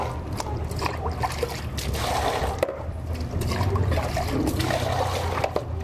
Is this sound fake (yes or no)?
no